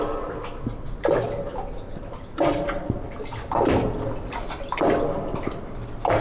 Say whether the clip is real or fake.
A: real